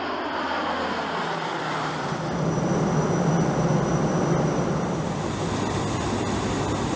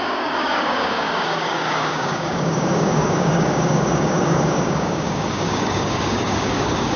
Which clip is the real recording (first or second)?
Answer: first